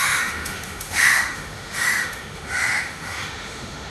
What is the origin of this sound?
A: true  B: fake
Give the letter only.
B